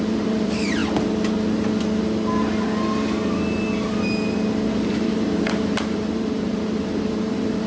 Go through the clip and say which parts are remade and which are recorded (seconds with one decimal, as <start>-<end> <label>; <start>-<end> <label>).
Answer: 0.0-0.8 remade; 0.8-4.7 recorded; 4.7-7.7 remade